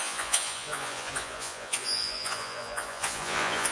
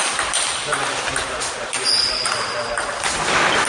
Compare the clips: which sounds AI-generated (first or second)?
first